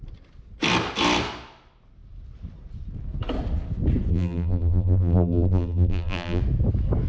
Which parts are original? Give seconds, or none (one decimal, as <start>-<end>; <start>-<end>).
0.0-4.1; 6.4-7.1